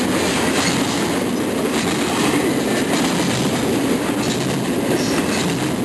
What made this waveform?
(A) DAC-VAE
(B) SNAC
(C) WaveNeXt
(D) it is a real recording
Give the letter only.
D